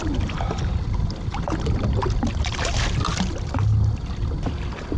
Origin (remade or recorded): recorded